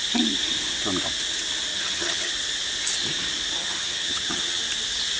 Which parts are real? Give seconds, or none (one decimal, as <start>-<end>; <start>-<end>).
0.0-1.7; 2.3-3.6; 4.6-5.2